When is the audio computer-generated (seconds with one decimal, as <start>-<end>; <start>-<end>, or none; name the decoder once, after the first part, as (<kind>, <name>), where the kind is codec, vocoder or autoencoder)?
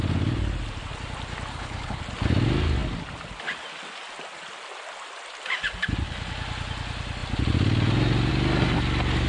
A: 1.5-2.0 (codec, HILCodec)